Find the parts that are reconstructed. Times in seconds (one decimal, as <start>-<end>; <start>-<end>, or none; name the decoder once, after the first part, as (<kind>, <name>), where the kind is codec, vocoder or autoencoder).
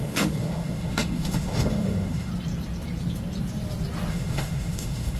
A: 0.0-2.3 (autoencoder, DAC-VAE); 4.1-5.2